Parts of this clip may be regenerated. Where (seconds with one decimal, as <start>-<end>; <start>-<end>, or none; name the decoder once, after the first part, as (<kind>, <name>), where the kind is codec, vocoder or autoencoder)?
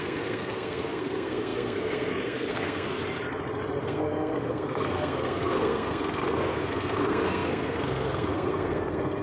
0.0-3.0 (codec, SNAC); 3.8-9.2